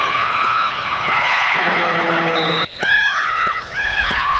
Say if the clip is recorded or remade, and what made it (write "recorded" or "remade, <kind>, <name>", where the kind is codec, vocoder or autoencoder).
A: remade, codec, HILCodec